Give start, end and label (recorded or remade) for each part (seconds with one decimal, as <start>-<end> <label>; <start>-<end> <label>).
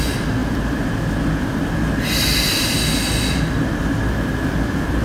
0.0-5.0 recorded